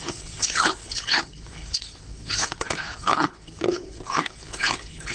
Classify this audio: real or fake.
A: fake